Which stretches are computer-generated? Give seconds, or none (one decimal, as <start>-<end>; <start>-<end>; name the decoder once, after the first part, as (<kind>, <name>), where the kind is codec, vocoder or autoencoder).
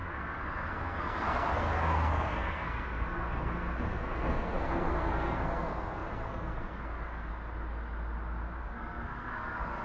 0.0-7.3 (codec, SNAC); 8.6-9.8